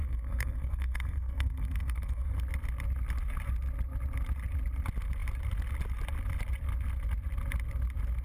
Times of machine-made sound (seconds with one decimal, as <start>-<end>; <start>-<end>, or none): 0.0-2.4